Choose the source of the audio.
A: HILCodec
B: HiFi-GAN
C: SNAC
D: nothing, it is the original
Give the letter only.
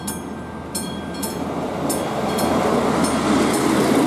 D